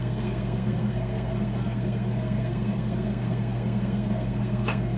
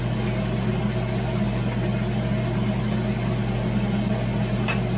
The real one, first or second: second